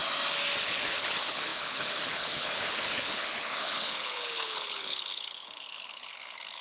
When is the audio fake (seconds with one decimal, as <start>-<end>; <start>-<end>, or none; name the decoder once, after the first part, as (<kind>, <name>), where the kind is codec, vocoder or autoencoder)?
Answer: 0.6-6.6 (codec, HILCodec)